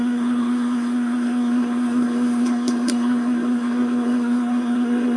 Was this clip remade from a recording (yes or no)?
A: yes